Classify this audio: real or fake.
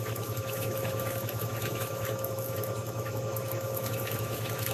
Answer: fake